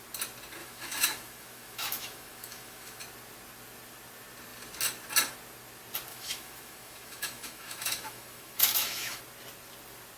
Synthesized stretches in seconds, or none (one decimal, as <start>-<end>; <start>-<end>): 0.6-3.0; 6.1-9.2